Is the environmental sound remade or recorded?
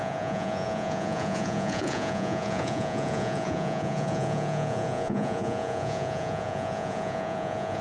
remade